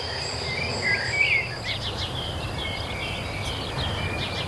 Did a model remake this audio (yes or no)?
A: no